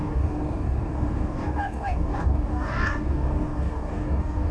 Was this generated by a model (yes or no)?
yes